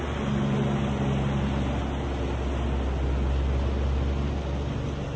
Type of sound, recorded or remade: recorded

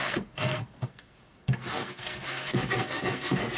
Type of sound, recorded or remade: remade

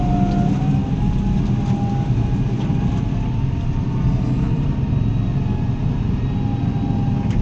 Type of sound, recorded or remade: recorded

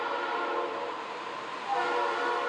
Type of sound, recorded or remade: recorded